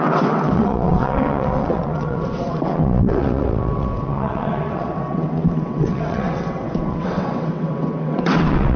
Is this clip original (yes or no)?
no